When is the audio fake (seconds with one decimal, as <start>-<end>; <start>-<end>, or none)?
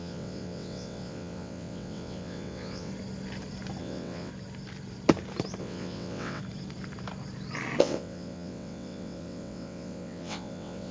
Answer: 0.0-2.9; 3.8-4.3; 5.6-6.4; 7.8-10.9